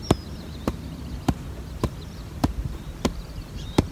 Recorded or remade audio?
remade